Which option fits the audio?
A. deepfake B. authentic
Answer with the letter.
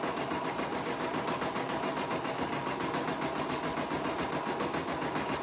B